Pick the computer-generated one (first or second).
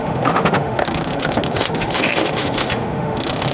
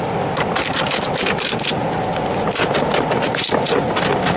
first